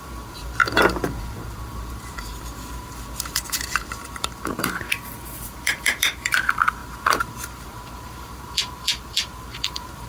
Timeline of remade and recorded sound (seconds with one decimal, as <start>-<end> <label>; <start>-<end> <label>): 0.0-10.1 remade